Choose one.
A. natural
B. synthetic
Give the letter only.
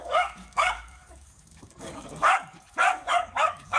B